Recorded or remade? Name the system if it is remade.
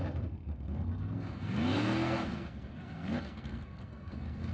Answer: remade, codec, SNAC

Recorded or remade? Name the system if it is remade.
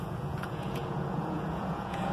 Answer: remade, vocoder, Vocos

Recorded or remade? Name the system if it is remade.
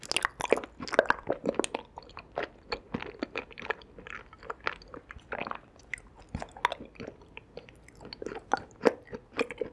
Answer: recorded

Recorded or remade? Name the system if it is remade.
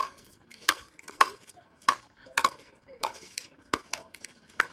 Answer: remade, codec, SNAC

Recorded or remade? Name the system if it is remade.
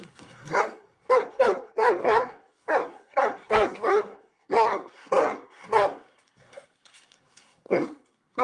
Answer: remade, codec, SNAC